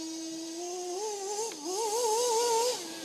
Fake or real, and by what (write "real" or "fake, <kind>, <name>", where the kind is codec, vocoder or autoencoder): real